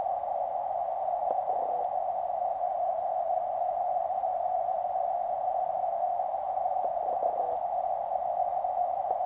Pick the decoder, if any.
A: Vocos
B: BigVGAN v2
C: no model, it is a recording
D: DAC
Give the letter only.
C